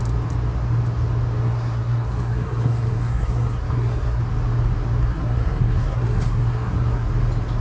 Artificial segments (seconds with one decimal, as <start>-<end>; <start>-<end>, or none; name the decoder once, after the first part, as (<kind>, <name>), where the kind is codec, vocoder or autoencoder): 1.4-4.2 (codec, SNAC); 5.0-7.1